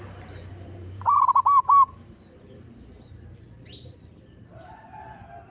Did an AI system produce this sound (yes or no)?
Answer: yes